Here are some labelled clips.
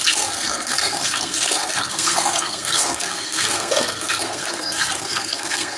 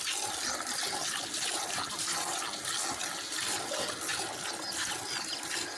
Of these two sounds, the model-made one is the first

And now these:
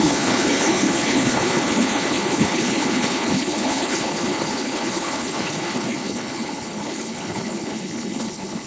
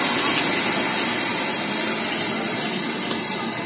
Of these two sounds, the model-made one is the first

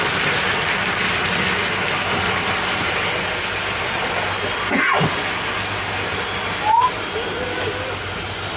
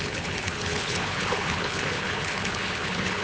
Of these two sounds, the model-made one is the second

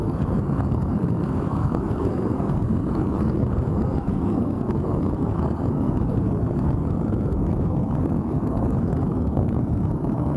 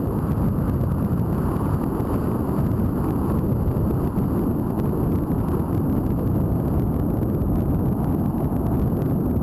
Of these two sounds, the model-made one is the first